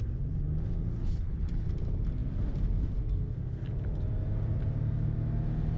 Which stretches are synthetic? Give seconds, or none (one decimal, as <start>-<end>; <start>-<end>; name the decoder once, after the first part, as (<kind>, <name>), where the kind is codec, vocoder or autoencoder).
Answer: 1.0-1.7 (codec, HILCodec)